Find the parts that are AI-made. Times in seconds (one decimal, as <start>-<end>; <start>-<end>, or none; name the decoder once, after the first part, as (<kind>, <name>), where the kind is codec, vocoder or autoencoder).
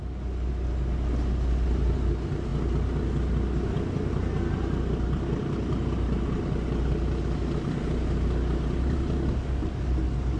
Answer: none